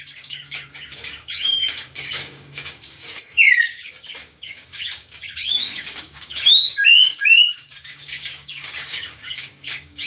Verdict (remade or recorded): remade